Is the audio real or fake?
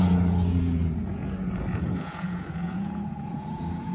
fake